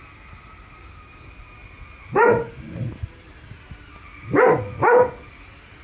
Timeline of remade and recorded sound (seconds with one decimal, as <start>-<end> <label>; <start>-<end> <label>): 0.0-5.8 recorded